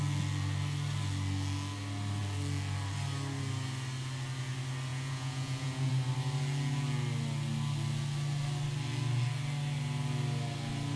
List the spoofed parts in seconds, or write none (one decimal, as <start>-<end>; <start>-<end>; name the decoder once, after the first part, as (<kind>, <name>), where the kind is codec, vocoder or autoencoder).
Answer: 4.9-5.9 (vocoder, Vocos)